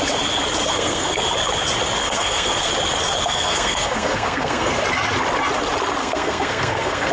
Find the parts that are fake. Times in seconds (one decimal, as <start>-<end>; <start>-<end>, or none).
0.6-1.2; 2.0-2.7; 3.2-4.8; 6.0-7.1